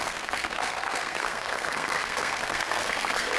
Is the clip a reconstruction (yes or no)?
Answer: yes